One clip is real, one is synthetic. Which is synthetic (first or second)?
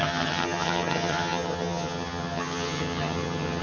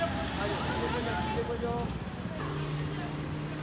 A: first